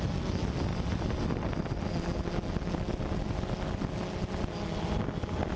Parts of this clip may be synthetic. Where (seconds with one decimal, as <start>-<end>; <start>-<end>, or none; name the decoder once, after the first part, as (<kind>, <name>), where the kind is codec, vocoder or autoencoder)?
none